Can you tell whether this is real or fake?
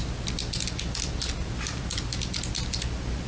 real